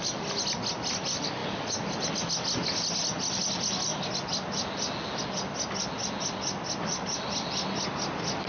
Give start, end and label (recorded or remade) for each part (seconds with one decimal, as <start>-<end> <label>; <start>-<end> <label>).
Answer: 0.0-8.5 recorded